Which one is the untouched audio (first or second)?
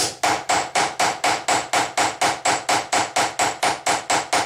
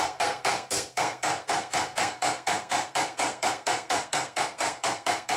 first